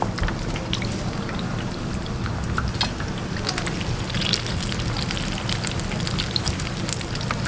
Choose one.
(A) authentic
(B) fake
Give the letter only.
A